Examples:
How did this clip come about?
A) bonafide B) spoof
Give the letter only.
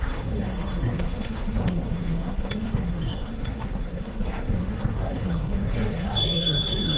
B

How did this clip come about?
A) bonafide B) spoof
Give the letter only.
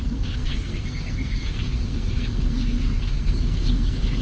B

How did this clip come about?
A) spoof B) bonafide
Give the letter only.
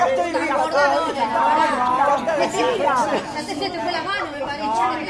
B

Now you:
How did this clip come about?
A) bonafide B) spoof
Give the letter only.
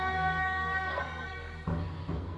B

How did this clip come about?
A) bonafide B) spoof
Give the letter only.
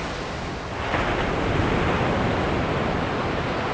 A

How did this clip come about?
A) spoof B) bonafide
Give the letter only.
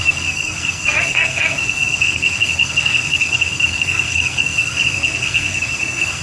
A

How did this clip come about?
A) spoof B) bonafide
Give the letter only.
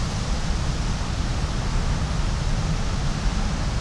B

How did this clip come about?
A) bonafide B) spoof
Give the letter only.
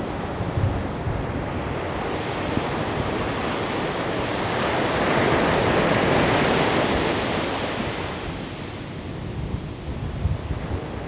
A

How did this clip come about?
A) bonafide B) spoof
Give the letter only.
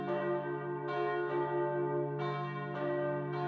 A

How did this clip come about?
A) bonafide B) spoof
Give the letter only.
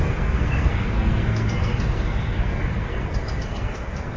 B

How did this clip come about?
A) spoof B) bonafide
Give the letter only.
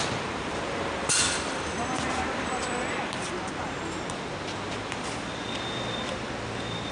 B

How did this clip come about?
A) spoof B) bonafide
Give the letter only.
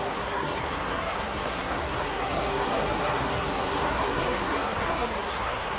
A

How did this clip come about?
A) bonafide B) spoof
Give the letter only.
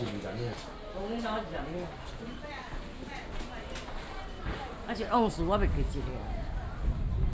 A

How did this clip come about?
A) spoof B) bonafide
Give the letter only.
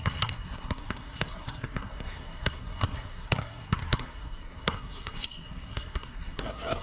A